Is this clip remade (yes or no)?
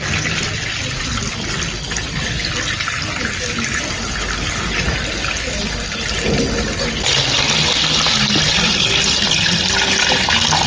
no